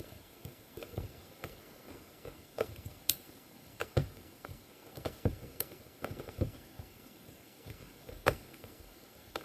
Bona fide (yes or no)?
no